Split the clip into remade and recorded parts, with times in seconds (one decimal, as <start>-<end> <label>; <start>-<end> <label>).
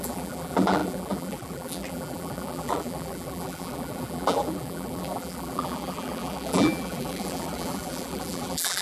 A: 0.0-8.8 remade